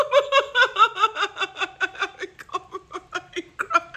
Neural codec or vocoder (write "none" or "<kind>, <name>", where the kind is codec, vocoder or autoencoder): none